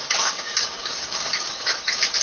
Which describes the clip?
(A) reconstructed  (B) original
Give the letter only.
A